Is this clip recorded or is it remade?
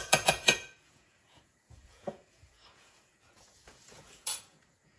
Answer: remade